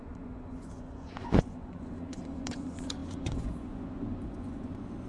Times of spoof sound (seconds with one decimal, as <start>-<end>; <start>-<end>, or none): 0.0-5.1